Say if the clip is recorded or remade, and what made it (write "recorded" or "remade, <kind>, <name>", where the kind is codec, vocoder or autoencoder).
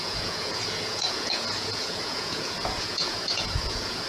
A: remade, vocoder, Vocos